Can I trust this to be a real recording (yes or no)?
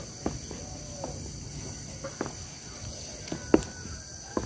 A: yes